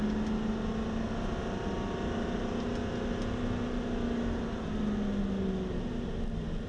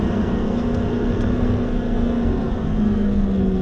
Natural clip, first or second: first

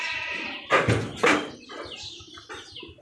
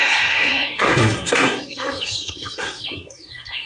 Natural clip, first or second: first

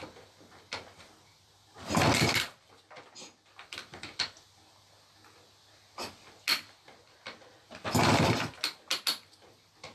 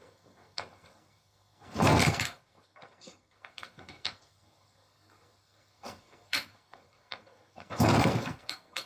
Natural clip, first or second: first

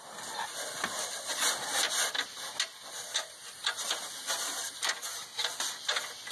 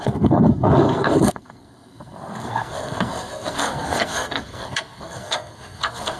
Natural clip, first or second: first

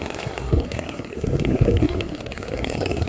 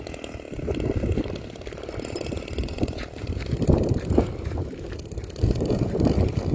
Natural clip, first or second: second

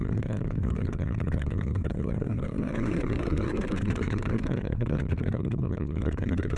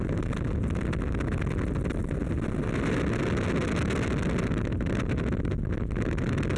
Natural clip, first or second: second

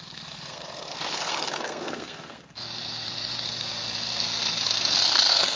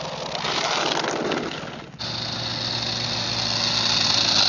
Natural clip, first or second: second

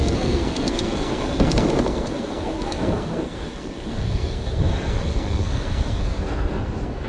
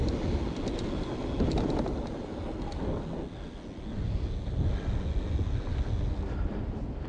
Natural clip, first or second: second